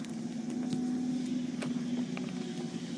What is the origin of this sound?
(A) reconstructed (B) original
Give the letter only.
B